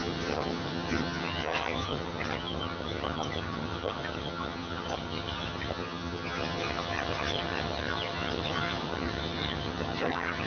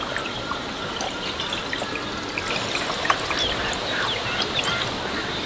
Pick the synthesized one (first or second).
first